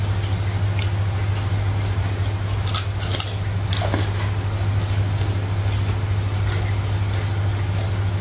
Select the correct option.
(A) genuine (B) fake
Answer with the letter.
A